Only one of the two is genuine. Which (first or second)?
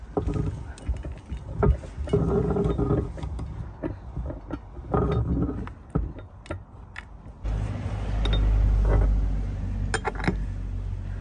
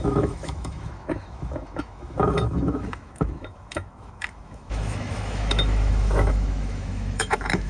first